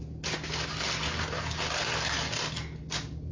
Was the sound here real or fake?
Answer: real